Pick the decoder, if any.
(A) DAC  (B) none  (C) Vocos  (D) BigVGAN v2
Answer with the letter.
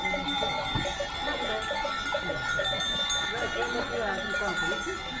B